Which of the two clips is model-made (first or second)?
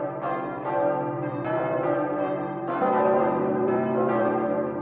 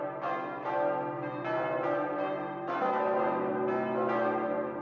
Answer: first